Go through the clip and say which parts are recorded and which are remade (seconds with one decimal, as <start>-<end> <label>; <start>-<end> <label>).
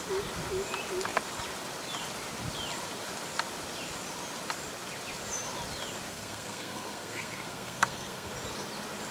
0.0-6.1 recorded; 6.1-8.3 remade; 8.3-9.1 recorded